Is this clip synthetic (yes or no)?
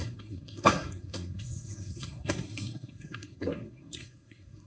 yes